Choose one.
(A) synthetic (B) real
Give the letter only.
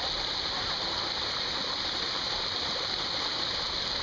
B